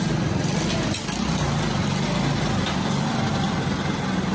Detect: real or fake real